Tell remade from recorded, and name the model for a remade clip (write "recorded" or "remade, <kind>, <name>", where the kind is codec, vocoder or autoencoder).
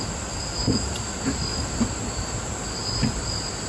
recorded